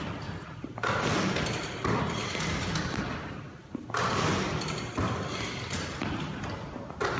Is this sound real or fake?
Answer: real